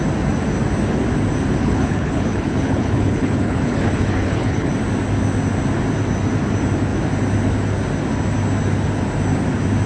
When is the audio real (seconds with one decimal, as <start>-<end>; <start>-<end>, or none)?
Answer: 0.0-1.6; 4.7-9.9